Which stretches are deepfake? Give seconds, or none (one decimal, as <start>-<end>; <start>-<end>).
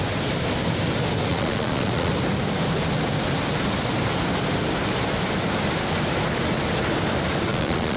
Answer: 1.3-2.1; 7.5-8.0